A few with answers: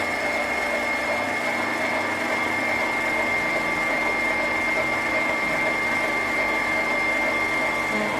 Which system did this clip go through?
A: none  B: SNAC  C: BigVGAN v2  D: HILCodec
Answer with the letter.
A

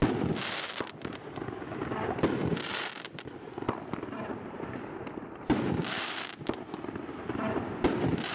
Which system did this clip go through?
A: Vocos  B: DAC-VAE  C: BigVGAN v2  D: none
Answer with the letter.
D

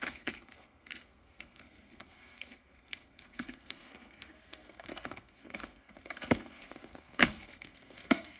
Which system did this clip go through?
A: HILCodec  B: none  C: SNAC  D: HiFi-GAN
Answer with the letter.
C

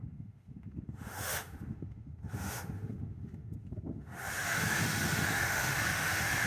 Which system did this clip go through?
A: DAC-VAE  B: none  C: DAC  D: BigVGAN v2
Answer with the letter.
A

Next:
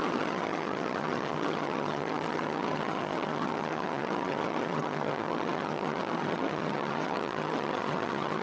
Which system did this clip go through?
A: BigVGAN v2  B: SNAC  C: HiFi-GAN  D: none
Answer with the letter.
C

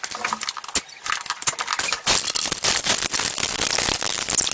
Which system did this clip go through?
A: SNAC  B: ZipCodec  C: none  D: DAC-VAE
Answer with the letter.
C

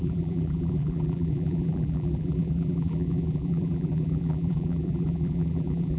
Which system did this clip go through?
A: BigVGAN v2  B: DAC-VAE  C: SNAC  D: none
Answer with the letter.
A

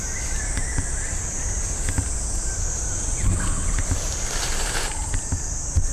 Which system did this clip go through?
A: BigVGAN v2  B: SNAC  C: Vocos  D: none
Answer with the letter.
D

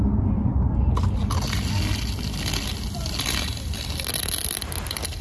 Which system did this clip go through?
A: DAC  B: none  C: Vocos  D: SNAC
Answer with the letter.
B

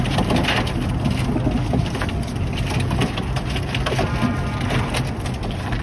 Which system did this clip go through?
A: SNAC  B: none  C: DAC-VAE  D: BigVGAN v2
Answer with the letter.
B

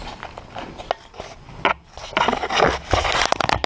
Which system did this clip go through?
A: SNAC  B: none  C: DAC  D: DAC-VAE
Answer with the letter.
B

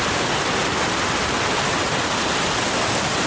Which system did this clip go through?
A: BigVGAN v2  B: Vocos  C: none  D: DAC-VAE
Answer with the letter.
C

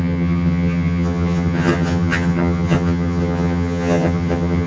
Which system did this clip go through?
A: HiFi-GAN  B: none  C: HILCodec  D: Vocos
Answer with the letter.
A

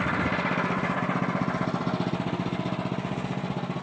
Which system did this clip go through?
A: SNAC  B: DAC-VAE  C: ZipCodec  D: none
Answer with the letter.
D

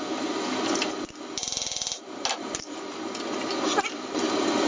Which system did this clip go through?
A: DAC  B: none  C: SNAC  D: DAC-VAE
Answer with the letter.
B